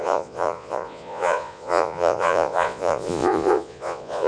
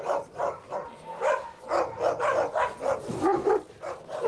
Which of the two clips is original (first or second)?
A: second